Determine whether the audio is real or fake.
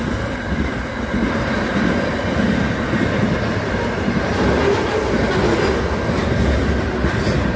real